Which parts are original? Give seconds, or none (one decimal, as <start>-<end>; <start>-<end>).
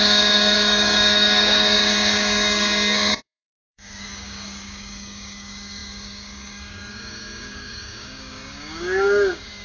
none